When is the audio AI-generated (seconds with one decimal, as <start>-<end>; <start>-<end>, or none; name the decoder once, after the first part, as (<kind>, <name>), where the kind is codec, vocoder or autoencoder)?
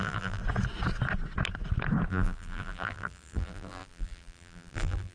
0.0-0.4 (vocoder, BigVGAN v2); 2.1-5.1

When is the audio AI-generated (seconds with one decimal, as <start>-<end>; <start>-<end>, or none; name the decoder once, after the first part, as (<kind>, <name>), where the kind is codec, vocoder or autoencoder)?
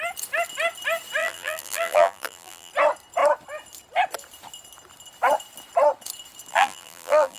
1.2-2.7 (vocoder, BigVGAN v2); 6.5-7.4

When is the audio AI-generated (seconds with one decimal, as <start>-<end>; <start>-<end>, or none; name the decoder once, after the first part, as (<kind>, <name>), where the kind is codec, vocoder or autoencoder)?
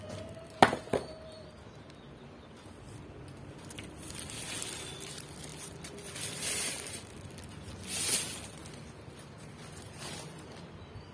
none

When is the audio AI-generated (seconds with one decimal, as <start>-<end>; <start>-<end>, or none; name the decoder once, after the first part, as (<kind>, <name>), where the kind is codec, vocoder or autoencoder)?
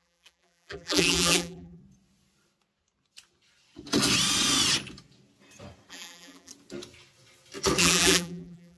0.0-1.8 (vocoder, BigVGAN v2); 5.9-6.5; 7.8-8.8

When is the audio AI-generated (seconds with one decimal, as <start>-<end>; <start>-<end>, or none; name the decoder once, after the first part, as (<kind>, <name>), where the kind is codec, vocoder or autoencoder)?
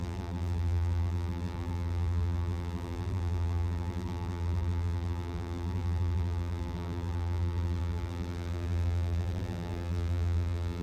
0.0-10.8 (vocoder, BigVGAN v2)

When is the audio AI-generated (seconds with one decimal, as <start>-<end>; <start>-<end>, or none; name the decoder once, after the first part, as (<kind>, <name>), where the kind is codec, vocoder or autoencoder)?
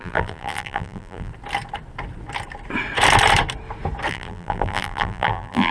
0.0-1.3 (vocoder, BigVGAN v2); 4.1-5.7